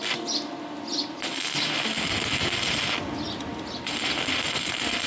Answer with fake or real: real